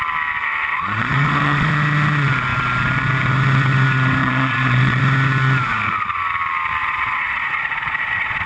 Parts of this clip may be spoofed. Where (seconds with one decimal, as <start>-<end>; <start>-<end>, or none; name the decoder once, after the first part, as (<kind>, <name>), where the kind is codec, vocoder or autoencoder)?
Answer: 0.7-1.7 (vocoder, Vocos); 4.2-5.0; 6.8-8.5